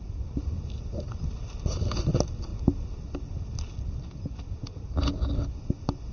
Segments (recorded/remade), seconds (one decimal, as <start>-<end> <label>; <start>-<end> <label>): 0.0-6.1 recorded